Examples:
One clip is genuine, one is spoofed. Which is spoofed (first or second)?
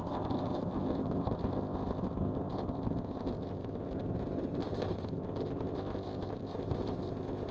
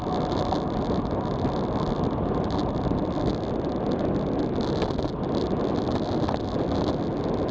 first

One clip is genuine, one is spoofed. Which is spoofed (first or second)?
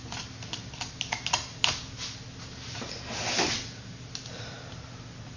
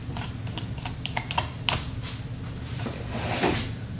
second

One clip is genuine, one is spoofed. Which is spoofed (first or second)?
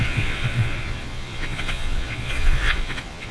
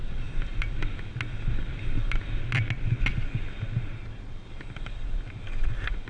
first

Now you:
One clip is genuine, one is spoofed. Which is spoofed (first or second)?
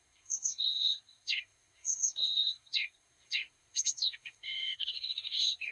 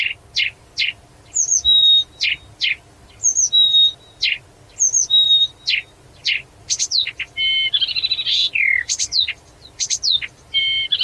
first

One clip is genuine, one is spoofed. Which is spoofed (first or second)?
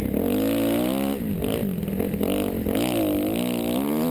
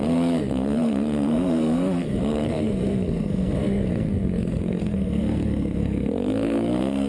second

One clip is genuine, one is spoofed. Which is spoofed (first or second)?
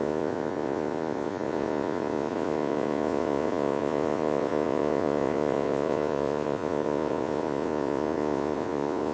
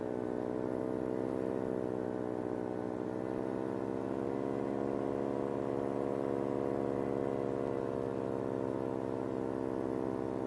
first